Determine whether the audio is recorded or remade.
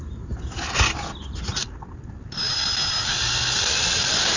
recorded